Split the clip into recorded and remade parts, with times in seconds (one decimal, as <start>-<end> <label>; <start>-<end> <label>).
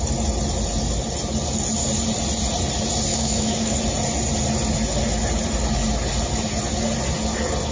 0.0-3.1 recorded; 3.1-3.8 remade; 3.8-7.7 recorded